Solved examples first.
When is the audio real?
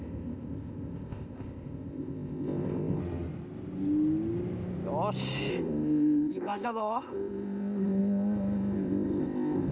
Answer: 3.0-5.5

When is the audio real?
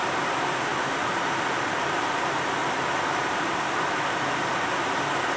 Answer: 0.0-5.4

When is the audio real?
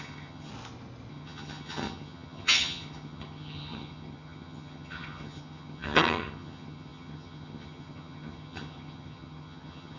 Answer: 0.5-1.1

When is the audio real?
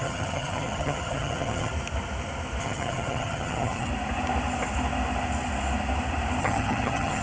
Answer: 1.7-2.6; 3.9-6.4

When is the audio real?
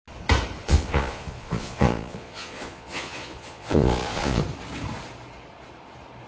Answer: 0.0-0.6; 4.4-6.3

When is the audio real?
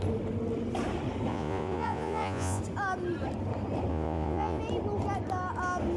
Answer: 0.0-1.3; 2.6-3.9; 4.6-6.0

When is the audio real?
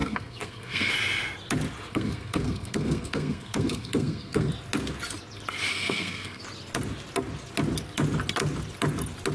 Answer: 0.9-1.9; 4.5-5.7; 6.4-9.3